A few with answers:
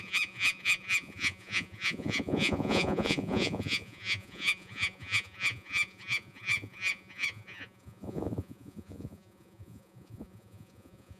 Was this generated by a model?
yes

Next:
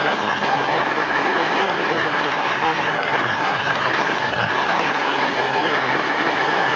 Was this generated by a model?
yes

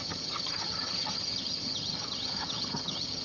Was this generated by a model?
yes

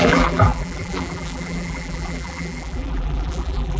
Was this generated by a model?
yes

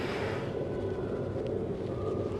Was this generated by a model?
no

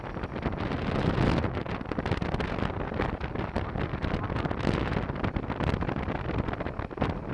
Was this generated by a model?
no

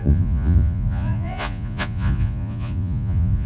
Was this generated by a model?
yes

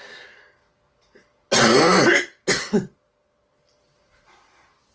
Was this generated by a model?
no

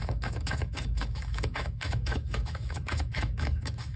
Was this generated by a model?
yes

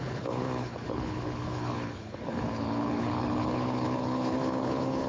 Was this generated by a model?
yes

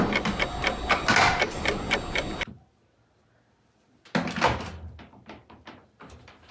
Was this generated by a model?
no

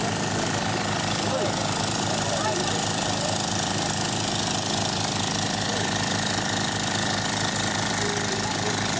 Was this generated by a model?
no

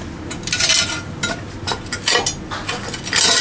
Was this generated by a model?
no